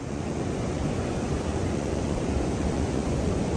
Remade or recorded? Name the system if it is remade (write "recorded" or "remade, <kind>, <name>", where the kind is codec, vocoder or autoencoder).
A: remade, vocoder, Vocos